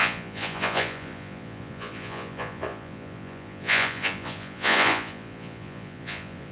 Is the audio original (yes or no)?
no